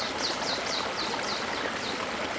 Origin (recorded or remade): recorded